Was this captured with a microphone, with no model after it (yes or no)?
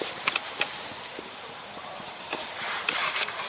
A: no